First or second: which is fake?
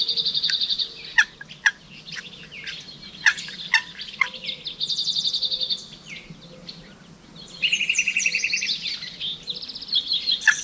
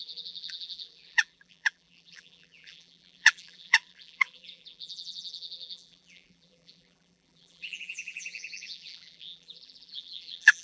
second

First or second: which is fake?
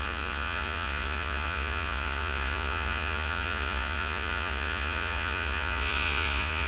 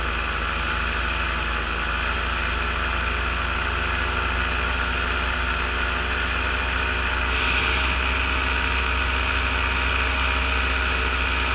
first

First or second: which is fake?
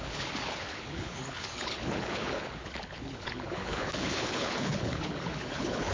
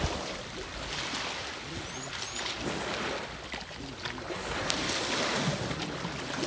first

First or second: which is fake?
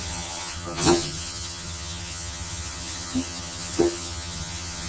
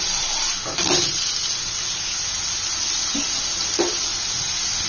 first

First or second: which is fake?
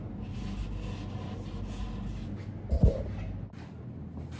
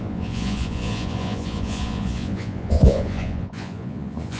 second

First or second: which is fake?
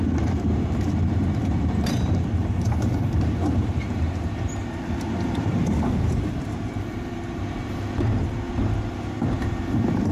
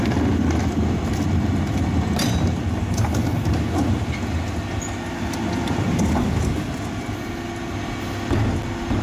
first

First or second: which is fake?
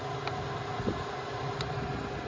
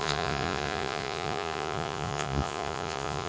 second